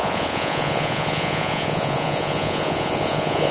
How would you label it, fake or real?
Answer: fake